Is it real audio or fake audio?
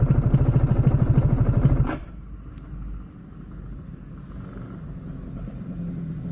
real